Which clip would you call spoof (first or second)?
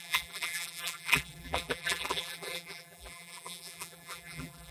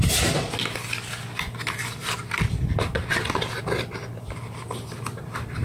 first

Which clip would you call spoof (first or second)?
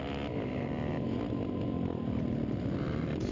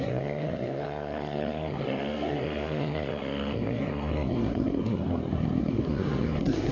second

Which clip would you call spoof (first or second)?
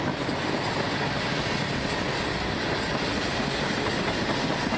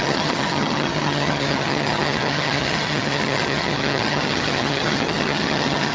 second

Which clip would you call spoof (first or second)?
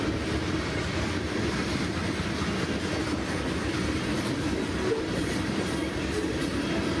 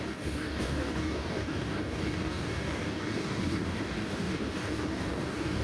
second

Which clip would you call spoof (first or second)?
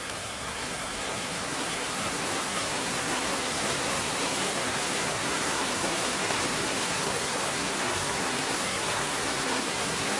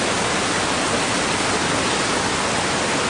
first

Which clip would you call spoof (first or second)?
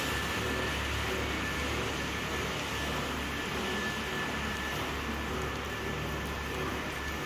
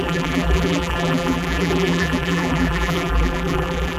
second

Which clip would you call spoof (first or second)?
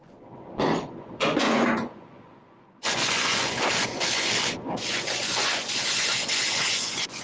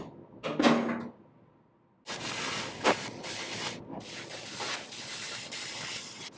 first